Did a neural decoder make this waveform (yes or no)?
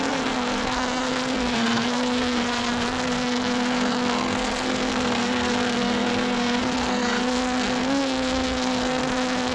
yes